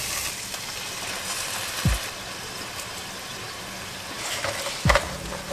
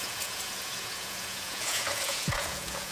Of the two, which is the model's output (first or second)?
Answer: second